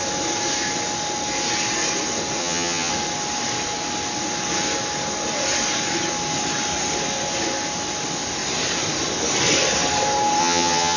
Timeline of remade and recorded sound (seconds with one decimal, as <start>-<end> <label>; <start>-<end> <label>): 0.0-2.4 recorded; 2.4-2.9 remade; 2.9-10.4 recorded; 10.4-11.0 remade